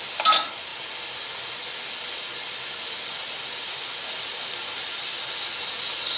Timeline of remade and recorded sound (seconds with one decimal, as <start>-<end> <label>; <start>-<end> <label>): 0.0-6.2 recorded